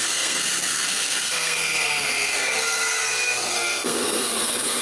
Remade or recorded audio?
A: remade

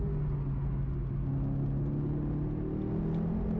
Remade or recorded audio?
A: recorded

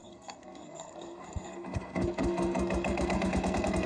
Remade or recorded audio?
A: remade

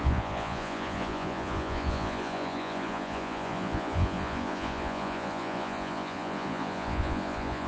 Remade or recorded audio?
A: remade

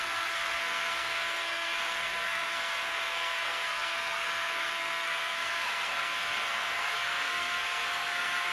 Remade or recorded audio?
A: remade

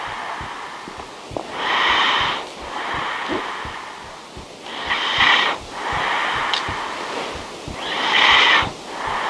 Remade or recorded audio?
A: recorded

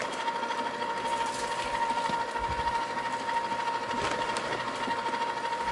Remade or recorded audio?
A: remade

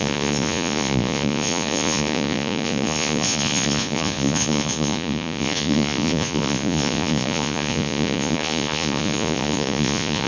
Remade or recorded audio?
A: remade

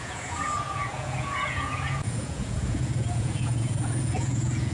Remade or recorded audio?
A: remade